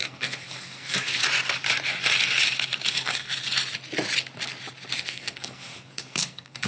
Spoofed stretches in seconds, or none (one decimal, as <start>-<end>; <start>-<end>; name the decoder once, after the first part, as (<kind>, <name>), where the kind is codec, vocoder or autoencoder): 0.0-1.2 (codec, SNAC); 2.9-3.3; 5.0-6.7